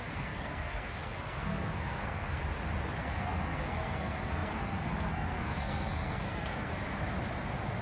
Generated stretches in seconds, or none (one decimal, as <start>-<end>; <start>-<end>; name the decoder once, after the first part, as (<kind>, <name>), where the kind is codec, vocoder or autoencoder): 0.0-2.4 (codec, SNAC); 3.0-6.7